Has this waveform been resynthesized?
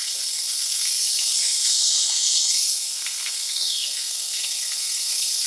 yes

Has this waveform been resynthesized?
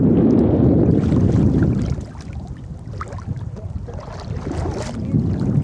no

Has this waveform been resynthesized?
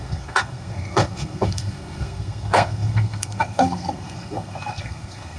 yes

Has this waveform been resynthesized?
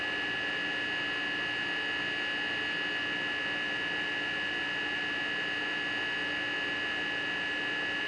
no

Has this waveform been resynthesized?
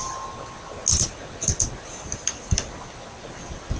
no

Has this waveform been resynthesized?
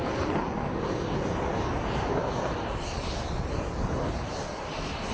no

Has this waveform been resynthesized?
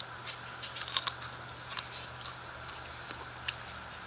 no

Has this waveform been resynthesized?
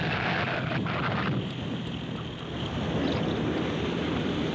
no